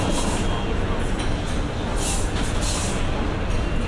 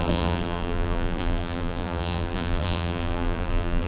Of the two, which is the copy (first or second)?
second